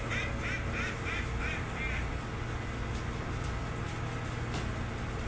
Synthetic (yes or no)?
no